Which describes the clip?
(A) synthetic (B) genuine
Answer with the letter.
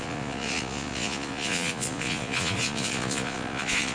A